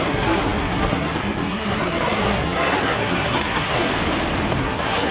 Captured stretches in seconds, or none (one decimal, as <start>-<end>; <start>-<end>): 3.9-4.6